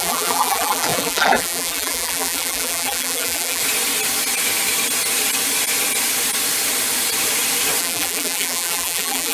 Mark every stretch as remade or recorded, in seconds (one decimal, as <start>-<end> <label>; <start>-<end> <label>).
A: 0.0-3.6 remade; 3.6-7.8 recorded; 7.8-9.3 remade